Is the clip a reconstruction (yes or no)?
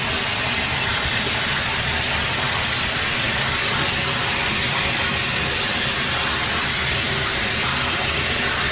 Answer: no